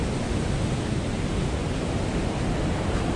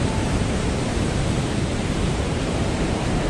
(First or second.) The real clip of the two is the first